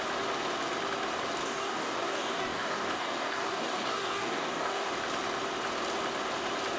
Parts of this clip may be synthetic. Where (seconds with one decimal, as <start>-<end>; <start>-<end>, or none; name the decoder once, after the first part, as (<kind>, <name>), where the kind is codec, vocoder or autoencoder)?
1.4-4.9 (codec, DAC)

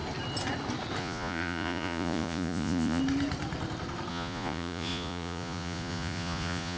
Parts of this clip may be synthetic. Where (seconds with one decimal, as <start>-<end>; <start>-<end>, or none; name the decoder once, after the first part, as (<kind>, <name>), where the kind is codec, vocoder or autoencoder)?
1.0-3.0 (vocoder, Vocos); 4.1-6.8

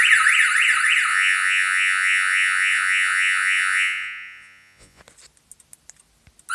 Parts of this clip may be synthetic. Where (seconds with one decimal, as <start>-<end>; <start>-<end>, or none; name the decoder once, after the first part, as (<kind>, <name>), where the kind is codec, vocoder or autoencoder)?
1.1-5.0 (vocoder, Vocos)

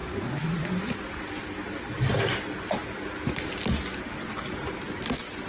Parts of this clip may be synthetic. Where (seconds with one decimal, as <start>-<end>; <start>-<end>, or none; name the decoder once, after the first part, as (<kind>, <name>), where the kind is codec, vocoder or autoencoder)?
none

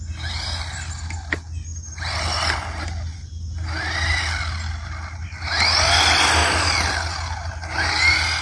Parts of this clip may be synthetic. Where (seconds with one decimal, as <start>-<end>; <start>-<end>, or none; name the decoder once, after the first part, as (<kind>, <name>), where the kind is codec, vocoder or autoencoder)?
none

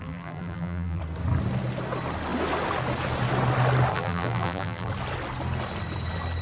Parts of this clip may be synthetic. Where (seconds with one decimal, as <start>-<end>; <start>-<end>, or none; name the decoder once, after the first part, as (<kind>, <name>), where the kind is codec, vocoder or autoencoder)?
0.0-1.0 (vocoder, BigVGAN v2); 3.9-4.9